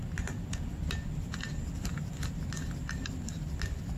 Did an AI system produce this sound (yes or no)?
no